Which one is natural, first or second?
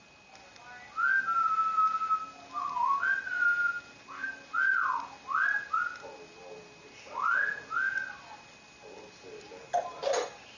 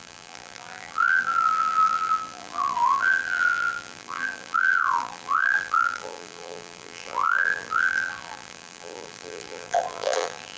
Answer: first